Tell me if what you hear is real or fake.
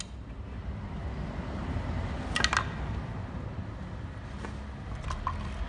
real